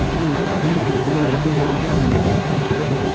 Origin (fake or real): fake